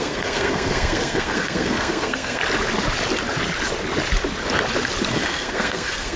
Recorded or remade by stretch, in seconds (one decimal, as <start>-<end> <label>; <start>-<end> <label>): 0.0-2.4 remade; 2.4-5.1 recorded; 5.1-6.2 remade